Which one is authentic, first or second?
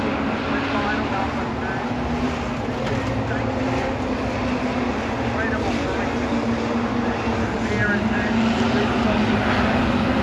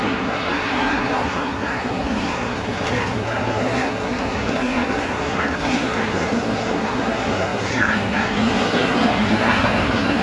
first